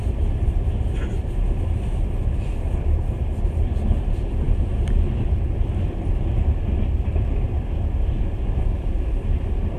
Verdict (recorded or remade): remade